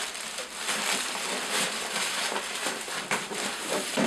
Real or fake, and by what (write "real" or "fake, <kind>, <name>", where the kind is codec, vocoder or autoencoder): fake, vocoder, BigVGAN v2